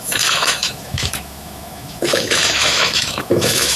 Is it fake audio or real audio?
fake